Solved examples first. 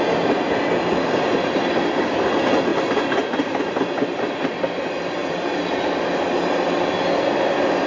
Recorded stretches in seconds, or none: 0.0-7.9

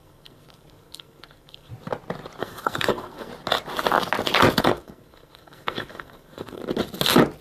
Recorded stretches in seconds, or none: 1.7-2.4; 3.3-4.6; 6.6-7.4

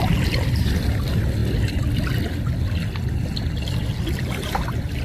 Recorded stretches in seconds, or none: 0.0-5.0

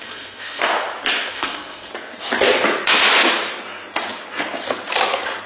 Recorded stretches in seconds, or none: 0.7-1.3; 1.9-5.5

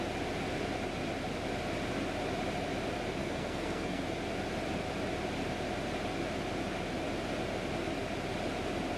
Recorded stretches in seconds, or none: 0.0-3.2; 4.0-9.0

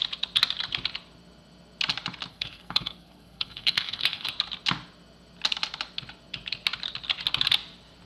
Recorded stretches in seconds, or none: 0.0-2.3; 4.3-8.1